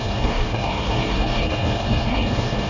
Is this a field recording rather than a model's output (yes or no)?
no